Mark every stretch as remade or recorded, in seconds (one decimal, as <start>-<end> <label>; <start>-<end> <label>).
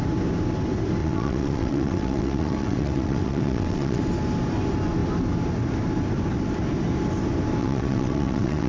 0.0-1.0 recorded; 1.0-4.0 remade; 4.0-7.6 recorded; 7.6-8.7 remade